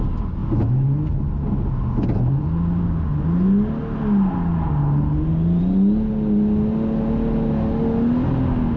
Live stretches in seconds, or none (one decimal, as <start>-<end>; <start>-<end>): 0.0-8.8